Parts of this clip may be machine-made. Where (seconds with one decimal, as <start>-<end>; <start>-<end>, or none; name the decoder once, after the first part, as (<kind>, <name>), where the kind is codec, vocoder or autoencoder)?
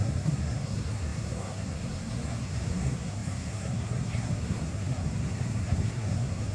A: 0.0-6.5 (codec, SNAC)